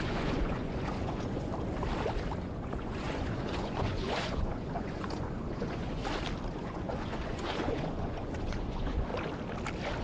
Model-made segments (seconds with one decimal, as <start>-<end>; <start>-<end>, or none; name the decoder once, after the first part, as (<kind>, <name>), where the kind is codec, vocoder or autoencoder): 0.0-1.5 (vocoder, Vocos); 2.4-6.0; 6.5-9.1